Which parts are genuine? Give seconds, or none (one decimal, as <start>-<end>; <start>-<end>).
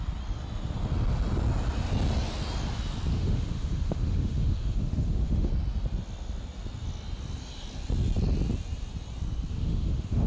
0.0-3.1; 5.5-9.5